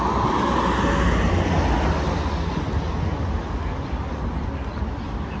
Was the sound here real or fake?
real